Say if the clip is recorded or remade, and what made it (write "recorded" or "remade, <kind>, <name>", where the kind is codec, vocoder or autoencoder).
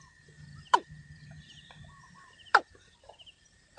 remade, vocoder, BigVGAN v2